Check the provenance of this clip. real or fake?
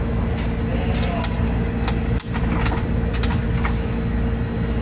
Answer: real